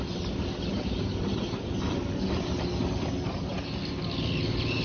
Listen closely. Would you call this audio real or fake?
real